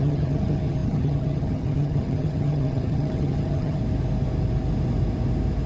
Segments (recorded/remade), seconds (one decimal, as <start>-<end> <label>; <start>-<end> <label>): 0.0-3.8 remade; 3.8-5.7 recorded